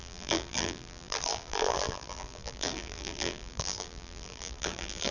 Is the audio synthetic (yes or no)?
yes